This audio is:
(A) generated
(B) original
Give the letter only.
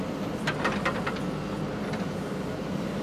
B